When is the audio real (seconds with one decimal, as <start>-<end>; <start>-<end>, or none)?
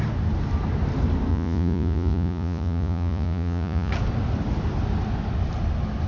0.0-1.3; 3.9-6.1